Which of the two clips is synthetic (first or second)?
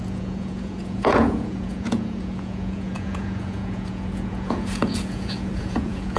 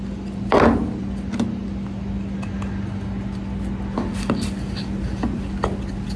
first